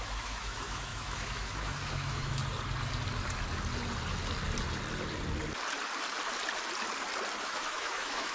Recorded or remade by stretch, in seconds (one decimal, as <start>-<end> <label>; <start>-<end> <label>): 0.0-2.4 remade; 2.4-7.4 recorded; 7.4-8.3 remade